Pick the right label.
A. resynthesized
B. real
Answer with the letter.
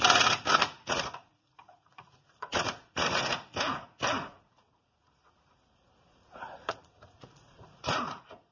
A